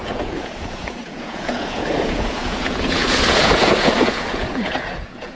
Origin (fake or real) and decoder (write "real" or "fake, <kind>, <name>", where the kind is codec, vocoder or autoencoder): fake, vocoder, Vocos